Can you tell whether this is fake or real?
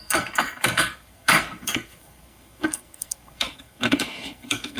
fake